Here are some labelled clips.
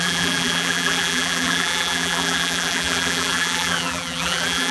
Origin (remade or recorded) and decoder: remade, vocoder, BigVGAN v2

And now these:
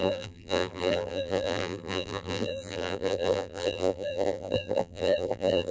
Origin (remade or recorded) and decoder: remade, vocoder, BigVGAN v2